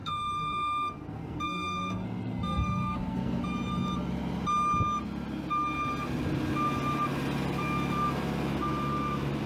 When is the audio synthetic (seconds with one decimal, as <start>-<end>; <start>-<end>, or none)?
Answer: 0.0-3.4